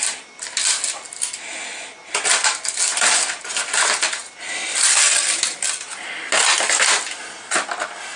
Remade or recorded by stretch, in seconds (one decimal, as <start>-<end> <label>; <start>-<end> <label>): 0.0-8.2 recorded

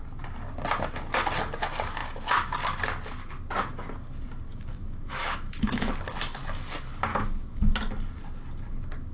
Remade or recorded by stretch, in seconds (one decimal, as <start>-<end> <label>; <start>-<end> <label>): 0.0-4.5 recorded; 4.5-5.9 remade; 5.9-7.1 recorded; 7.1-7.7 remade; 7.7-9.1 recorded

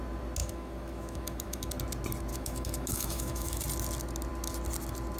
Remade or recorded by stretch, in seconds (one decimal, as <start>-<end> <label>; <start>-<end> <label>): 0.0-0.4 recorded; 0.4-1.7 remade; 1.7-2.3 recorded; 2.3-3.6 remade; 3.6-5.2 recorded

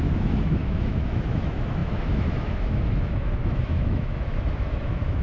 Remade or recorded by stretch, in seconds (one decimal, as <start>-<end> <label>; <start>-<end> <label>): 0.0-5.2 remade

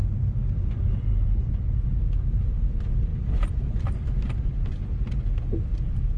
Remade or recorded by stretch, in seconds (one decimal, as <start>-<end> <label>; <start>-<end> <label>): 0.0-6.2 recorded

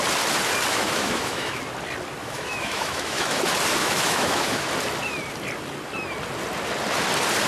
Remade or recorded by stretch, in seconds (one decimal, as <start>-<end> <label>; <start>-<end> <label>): 0.0-0.7 recorded; 0.7-1.6 remade; 1.6-2.2 recorded; 2.2-3.4 remade; 3.4-3.8 recorded; 3.8-4.7 remade; 4.7-7.5 recorded